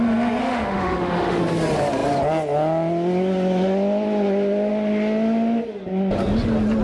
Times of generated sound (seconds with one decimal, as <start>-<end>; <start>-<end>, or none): 0.4-1.4